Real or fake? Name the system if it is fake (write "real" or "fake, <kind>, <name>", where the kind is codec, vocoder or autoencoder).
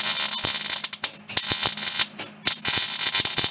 real